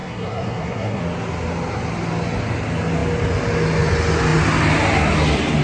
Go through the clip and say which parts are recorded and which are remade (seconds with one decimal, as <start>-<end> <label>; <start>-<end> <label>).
0.0-1.0 remade; 1.0-5.6 recorded